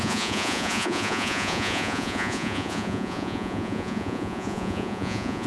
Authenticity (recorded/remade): remade